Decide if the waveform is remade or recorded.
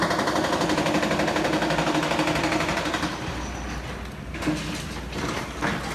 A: recorded